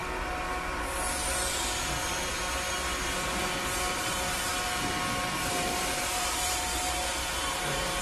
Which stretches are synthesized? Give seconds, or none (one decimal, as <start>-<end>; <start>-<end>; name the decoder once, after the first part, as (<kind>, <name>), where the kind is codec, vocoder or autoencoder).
4.0-4.5 (vocoder, BigVGAN v2); 5.5-8.0